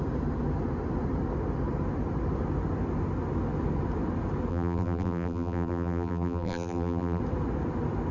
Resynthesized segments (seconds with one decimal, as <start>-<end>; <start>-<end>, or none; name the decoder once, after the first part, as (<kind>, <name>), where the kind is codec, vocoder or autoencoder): 4.5-7.2 (vocoder, BigVGAN v2)